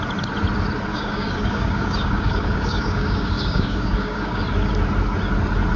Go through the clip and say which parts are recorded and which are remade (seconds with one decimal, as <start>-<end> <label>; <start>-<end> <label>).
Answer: 0.0-0.9 recorded; 0.9-4.4 remade; 4.4-5.8 recorded